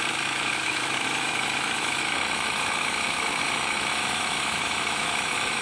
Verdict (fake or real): fake